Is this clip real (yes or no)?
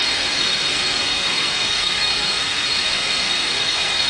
no